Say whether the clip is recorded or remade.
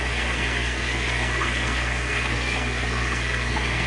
remade